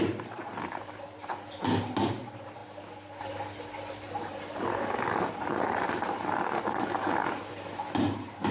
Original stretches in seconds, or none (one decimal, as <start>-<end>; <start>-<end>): 0.0-8.5